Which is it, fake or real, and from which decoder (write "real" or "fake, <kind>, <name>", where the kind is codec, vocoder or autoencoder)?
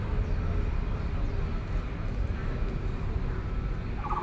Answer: real